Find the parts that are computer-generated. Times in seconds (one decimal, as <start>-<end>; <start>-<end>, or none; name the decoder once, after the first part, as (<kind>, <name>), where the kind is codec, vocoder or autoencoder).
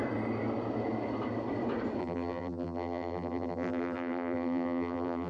2.0-5.3 (vocoder, BigVGAN v2)